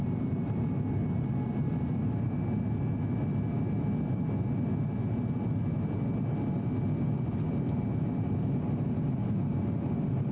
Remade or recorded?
recorded